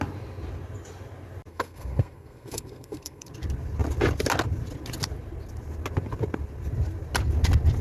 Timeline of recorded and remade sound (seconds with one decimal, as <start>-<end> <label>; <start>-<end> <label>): 0.0-1.5 recorded; 1.5-3.3 remade; 3.3-7.8 recorded